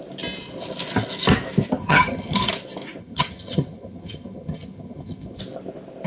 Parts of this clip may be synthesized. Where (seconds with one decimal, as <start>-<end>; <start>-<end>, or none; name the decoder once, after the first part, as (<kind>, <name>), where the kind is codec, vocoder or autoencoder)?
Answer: 1.8-2.5 (vocoder, HiFi-GAN); 3.0-5.4